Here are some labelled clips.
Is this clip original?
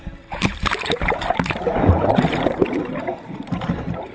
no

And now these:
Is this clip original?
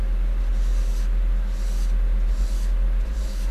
yes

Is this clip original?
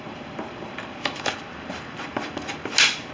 yes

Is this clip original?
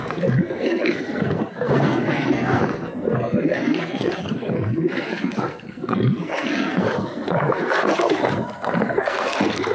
no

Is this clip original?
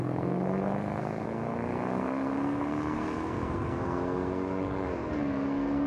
no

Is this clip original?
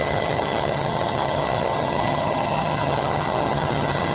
no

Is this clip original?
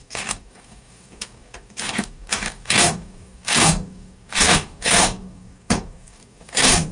no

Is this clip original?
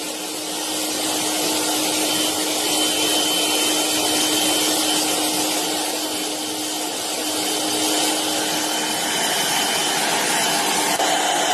yes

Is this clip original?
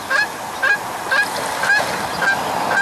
yes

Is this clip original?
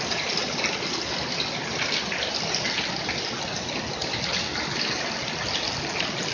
yes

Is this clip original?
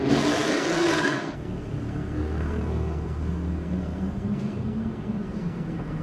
no